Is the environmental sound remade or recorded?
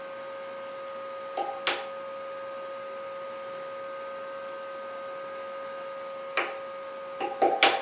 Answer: recorded